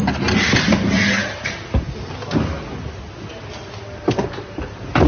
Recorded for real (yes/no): yes